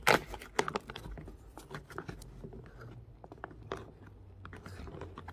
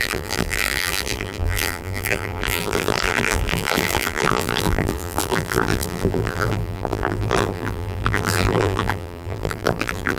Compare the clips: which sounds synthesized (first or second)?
second